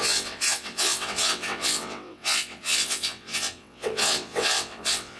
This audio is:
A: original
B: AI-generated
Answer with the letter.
B